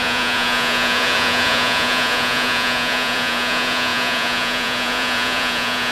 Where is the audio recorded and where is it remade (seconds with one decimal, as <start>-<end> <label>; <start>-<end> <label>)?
0.0-5.9 remade